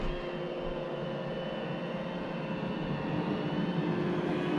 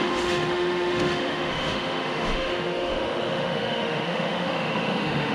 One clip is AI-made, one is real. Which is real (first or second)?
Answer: first